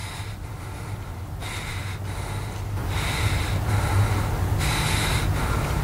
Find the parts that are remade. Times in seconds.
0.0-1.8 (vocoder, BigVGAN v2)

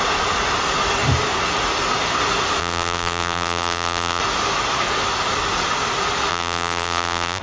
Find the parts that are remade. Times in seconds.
2.6-4.2 (vocoder, BigVGAN v2); 6.3-7.4

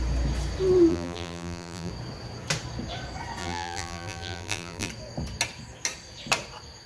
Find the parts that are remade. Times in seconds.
0.9-1.9 (vocoder, BigVGAN v2); 3.4-4.9

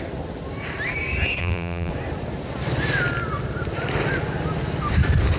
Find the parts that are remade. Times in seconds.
1.4-1.9 (vocoder, BigVGAN v2)

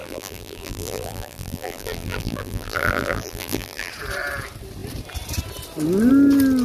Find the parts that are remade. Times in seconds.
0.0-3.9 (vocoder, BigVGAN v2)

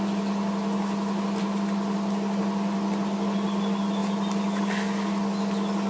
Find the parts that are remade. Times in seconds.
none

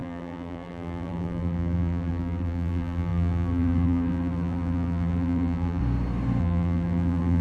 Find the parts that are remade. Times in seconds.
0.0-5.8 (vocoder, BigVGAN v2); 6.4-7.4

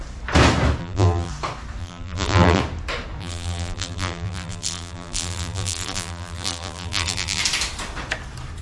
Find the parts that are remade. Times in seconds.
0.8-1.3 (vocoder, BigVGAN v2); 1.8-2.6; 3.2-7.4